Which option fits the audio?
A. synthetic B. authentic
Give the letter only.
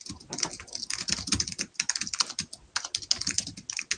B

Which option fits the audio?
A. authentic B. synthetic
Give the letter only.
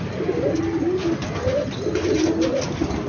A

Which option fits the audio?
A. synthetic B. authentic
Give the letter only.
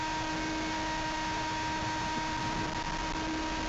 B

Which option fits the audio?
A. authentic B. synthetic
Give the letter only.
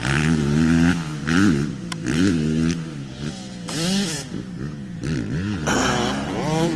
A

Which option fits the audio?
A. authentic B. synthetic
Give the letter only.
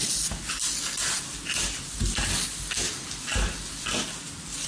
A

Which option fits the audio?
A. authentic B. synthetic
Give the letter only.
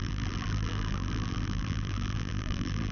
B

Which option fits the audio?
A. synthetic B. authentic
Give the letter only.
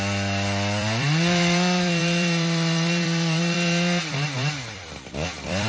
A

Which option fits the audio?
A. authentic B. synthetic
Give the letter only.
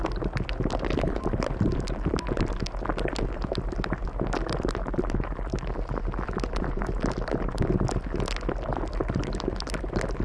A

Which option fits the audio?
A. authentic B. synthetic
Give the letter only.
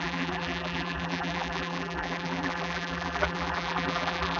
B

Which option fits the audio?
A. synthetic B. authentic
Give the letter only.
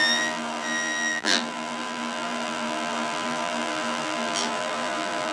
A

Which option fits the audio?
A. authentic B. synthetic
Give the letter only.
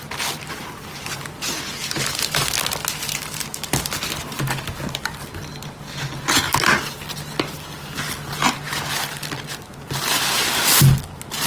A